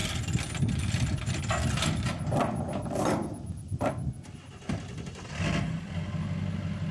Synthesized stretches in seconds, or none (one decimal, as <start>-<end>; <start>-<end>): none